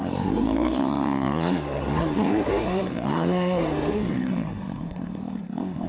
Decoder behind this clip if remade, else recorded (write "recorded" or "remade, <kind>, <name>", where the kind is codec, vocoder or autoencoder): remade, codec, SNAC